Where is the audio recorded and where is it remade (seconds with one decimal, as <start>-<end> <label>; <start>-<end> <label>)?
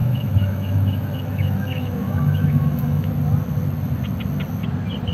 0.0-3.1 remade; 3.1-5.1 recorded